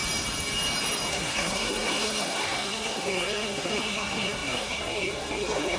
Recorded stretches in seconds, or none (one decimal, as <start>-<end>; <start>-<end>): 0.0-1.1